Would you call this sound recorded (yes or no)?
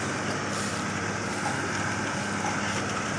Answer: yes